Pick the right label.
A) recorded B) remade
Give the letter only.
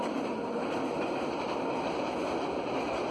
A